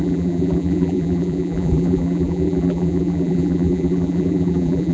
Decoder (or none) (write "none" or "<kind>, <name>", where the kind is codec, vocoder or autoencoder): vocoder, BigVGAN v2